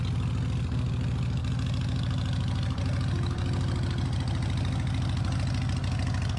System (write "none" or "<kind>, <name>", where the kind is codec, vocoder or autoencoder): none